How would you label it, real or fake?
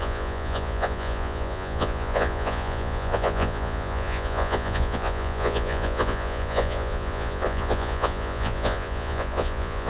fake